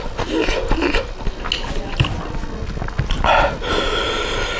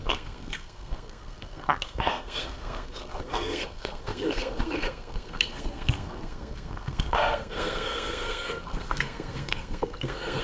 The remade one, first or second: second